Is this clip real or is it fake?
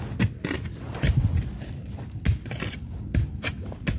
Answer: real